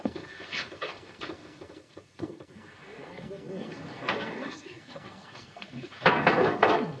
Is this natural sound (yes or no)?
no